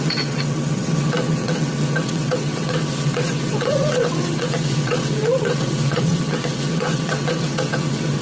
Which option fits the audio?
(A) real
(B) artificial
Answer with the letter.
B